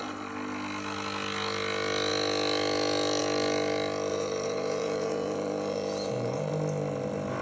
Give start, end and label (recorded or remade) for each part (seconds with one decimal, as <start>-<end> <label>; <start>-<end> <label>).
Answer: 0.0-4.1 recorded; 4.1-6.5 remade; 6.5-7.4 recorded